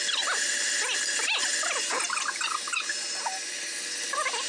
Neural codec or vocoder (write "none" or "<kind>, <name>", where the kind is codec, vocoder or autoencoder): none